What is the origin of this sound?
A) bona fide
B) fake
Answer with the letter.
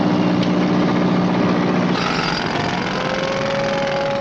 A